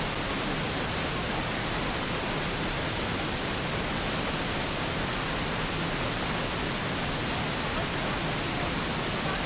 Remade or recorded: remade